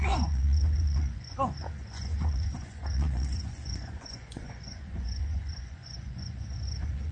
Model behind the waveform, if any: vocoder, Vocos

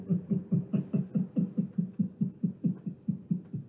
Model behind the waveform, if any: none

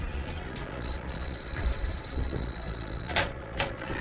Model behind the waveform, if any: vocoder, Vocos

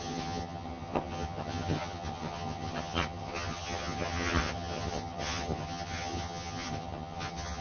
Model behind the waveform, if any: vocoder, HiFi-GAN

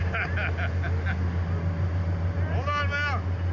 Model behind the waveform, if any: none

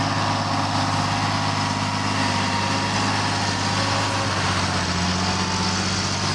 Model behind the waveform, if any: none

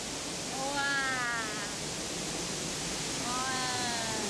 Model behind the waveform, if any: none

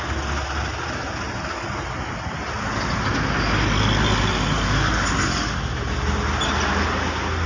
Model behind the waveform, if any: none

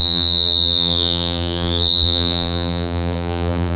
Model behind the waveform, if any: vocoder, BigVGAN v2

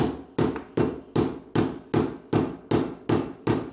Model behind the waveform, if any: none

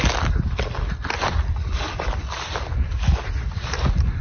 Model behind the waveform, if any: none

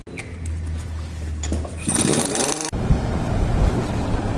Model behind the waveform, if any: none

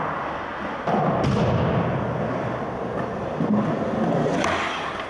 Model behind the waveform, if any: none